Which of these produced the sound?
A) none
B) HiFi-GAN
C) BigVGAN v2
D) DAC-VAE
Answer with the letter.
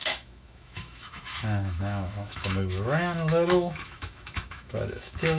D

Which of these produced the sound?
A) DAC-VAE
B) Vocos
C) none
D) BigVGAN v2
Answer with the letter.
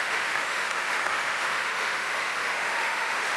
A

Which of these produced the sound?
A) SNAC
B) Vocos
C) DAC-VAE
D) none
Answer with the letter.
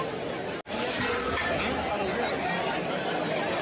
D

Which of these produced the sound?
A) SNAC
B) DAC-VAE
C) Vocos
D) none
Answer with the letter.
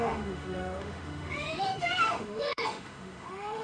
B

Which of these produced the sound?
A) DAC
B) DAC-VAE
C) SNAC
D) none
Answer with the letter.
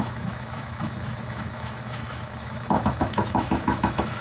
B